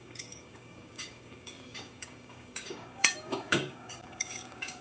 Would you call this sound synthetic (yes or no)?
yes